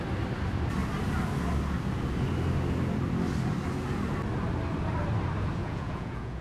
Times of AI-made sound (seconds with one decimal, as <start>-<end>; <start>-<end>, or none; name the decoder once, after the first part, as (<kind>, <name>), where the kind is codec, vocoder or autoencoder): 5.6-6.4 (vocoder, Vocos)